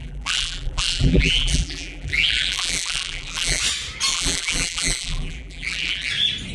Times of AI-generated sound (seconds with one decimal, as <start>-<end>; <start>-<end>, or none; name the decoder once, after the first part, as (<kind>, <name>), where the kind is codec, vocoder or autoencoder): 0.0-3.6 (vocoder, BigVGAN v2); 4.1-6.1